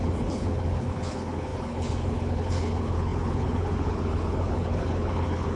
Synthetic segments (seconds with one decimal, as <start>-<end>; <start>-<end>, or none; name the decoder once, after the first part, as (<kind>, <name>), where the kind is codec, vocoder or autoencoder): 0.0-5.6 (codec, HILCodec)

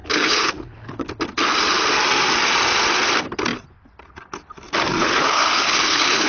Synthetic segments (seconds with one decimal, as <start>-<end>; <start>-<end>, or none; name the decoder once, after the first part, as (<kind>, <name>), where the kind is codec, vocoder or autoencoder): 0.0-1.1 (codec, HILCodec); 5.0-6.3